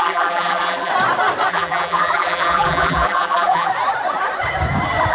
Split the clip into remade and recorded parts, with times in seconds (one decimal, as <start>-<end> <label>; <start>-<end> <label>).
0.0-0.9 remade; 0.9-1.5 recorded; 1.5-3.7 remade; 3.7-5.1 recorded